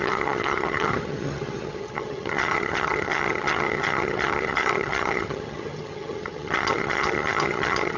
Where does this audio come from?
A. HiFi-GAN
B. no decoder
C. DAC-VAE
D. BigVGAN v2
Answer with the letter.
A